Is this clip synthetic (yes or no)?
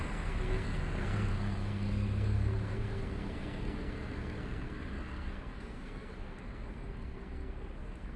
yes